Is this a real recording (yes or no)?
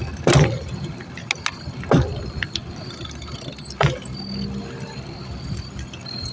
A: yes